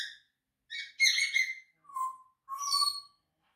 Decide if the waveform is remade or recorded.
recorded